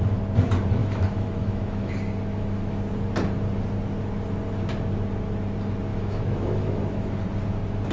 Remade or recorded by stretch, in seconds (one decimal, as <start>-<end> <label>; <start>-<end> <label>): 0.0-0.8 recorded; 0.8-1.9 remade; 1.9-2.3 recorded; 2.3-2.8 remade; 2.8-5.9 recorded; 5.9-7.2 remade; 7.2-7.9 recorded